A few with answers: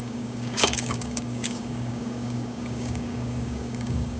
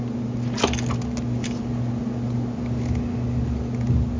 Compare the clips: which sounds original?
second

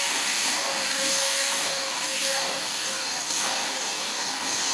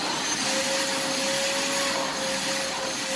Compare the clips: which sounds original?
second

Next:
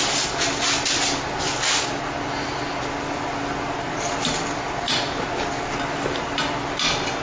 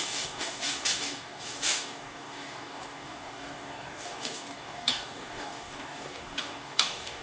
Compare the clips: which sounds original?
first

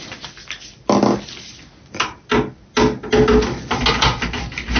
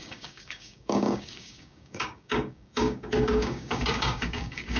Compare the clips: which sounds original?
first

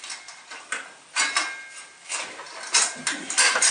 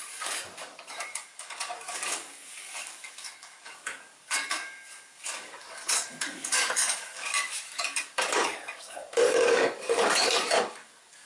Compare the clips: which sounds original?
first